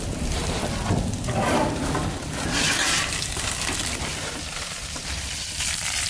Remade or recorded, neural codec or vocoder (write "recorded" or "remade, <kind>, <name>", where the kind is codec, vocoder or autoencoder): remade, vocoder, BigVGAN v2